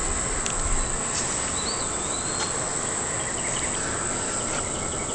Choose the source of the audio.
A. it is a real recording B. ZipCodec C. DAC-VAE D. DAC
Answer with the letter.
A